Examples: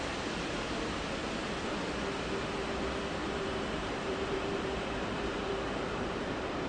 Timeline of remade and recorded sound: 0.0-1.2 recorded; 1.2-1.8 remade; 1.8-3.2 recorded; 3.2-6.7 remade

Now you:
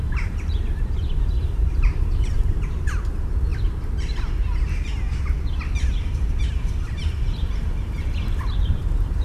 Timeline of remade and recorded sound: 0.0-3.5 remade; 3.5-5.7 recorded; 5.7-6.5 remade; 6.5-7.0 recorded; 7.0-9.2 remade

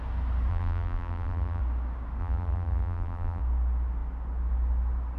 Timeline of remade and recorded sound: 0.0-0.5 recorded; 0.5-1.6 remade; 1.6-2.2 recorded; 2.2-3.4 remade; 3.4-5.2 recorded

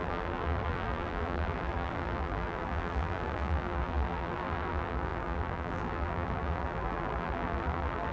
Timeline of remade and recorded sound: 0.0-8.1 remade

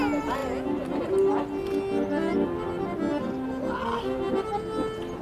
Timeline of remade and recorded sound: 0.0-5.2 recorded

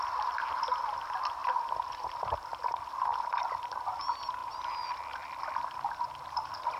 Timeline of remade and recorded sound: 0.0-1.4 recorded; 1.4-2.7 remade; 2.7-3.1 recorded; 3.1-4.0 remade; 4.0-4.4 recorded; 4.4-5.5 remade; 5.5-6.8 recorded